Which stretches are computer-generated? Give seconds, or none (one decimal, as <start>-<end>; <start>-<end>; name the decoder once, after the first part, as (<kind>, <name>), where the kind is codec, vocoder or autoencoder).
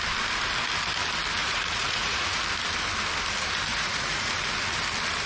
1.4-2.4 (vocoder, Vocos); 3.7-4.3